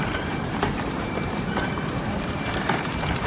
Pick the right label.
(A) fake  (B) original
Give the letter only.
A